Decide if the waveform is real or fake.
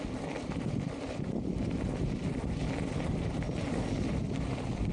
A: real